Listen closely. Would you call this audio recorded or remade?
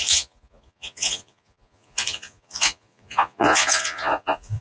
remade